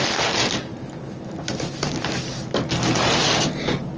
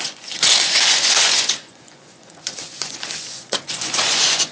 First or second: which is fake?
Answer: second